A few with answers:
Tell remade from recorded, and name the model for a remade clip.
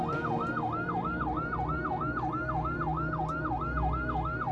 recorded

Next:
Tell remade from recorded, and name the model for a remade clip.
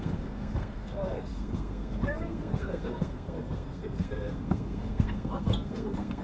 remade, codec, SNAC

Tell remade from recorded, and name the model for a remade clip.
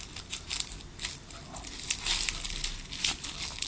recorded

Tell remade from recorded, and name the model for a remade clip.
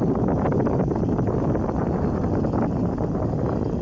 recorded